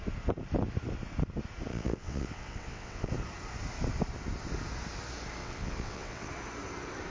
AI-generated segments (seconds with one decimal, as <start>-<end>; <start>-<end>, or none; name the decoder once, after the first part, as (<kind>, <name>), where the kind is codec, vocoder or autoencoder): 1.7-3.1 (vocoder, WaveNeXt); 5.4-6.3